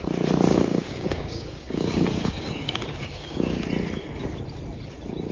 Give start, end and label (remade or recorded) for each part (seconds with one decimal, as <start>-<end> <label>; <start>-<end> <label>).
0.0-0.5 recorded; 0.5-3.7 remade; 3.7-5.3 recorded